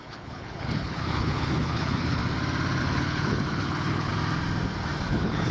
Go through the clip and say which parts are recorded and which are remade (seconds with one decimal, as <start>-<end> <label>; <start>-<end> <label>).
0.0-2.2 remade; 2.2-2.8 recorded; 2.8-4.1 remade; 4.1-5.1 recorded; 5.1-5.5 remade